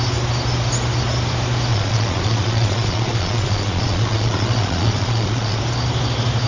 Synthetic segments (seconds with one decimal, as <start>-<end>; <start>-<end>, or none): 1.7-5.6